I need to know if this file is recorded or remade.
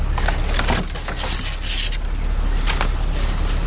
recorded